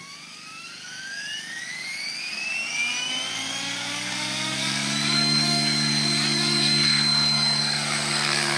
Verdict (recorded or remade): remade